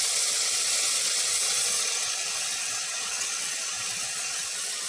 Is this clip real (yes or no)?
no